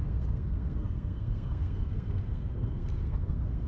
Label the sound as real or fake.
fake